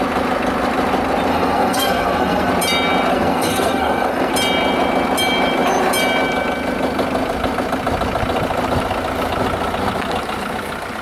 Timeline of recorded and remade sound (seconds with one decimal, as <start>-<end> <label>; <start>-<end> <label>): 0.0-1.3 recorded; 1.3-2.5 remade; 2.5-3.1 recorded; 3.1-4.3 remade; 4.3-11.0 recorded